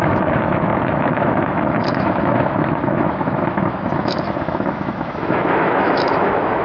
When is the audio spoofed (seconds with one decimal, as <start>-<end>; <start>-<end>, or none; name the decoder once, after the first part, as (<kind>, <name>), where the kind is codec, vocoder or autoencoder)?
0.0-6.6 (autoencoder, DAC-VAE)